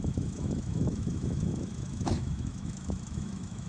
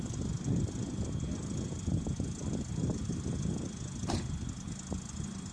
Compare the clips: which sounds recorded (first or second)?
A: second